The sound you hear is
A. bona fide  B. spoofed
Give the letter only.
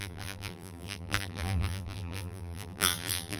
B